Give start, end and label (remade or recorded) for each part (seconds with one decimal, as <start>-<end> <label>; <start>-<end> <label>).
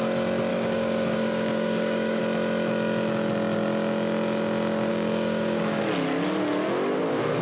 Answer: 0.0-0.5 recorded; 0.5-2.2 remade; 2.2-4.9 recorded; 4.9-5.8 remade; 5.8-7.4 recorded